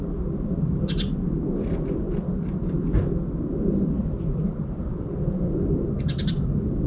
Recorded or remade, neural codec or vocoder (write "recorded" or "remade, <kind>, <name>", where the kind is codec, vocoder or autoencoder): recorded